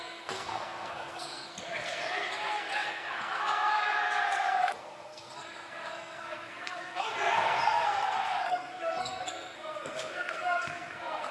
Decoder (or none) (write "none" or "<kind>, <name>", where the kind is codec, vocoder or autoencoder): codec, SNAC